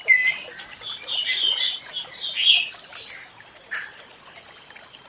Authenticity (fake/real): real